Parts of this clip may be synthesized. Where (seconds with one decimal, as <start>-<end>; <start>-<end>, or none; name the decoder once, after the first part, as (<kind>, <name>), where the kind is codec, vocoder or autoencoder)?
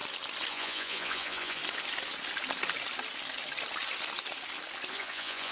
0.5-1.6 (vocoder, Vocos); 4.9-5.5